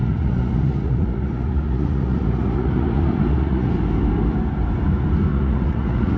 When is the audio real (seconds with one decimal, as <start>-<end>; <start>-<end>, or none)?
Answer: 3.7-5.3